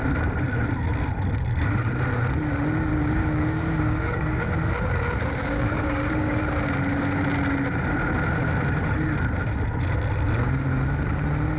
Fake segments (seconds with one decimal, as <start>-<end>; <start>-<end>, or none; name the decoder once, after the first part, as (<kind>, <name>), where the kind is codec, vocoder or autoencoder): 2.9-4.6 (codec, DAC); 5.4-6.4